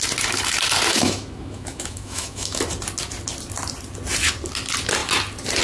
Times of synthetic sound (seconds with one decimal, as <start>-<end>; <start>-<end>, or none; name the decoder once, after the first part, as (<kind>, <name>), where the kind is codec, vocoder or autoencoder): 0.9-2.6 (autoencoder, DAC-VAE)